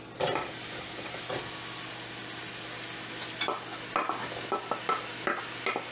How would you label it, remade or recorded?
recorded